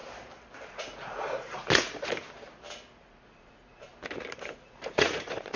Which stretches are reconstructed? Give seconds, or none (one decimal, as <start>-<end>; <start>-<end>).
0.7-2.1; 3.0-3.9; 4.5-5.6